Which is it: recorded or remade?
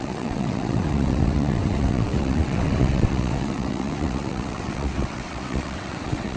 remade